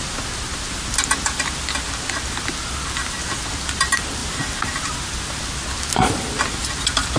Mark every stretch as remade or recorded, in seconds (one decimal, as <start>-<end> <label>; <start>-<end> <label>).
0.0-4.2 recorded; 4.2-4.9 remade; 4.9-7.2 recorded